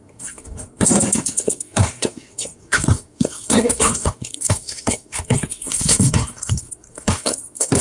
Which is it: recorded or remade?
remade